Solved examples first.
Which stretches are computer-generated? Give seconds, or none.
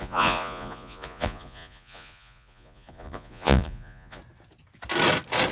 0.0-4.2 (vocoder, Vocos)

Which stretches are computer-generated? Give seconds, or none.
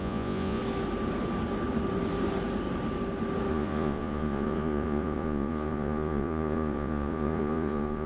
0.0-0.6 (vocoder, Vocos); 3.5-8.1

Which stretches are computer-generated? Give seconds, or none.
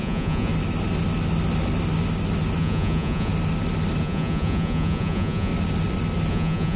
0.0-0.5 (vocoder, Vocos); 2.6-3.3; 4.0-5.5; 6.3-6.8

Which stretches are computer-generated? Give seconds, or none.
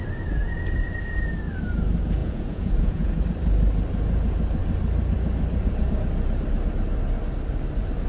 2.2-3.2 (vocoder, Vocos)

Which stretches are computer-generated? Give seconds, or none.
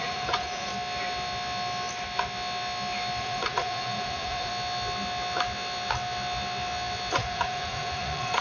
0.0-0.7 (vocoder, Vocos); 3.2-4.5; 7.1-8.4